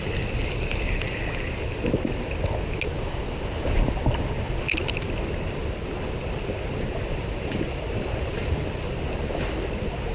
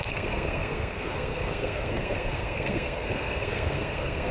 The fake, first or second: second